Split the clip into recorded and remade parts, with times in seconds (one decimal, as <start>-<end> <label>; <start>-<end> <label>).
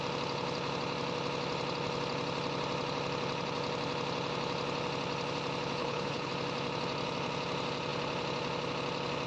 0.0-5.8 recorded; 5.8-6.3 remade; 6.3-9.3 recorded